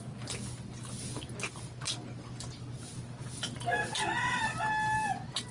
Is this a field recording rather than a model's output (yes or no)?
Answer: yes